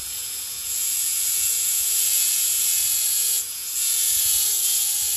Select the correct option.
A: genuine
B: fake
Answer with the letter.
B